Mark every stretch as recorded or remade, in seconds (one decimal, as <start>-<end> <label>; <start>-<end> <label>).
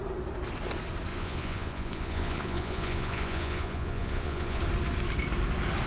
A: 0.0-1.1 recorded; 1.1-4.6 remade; 4.6-5.9 recorded